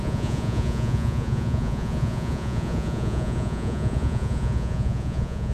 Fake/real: fake